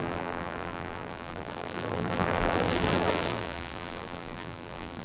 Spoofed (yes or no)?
yes